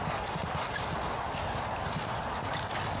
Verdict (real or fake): real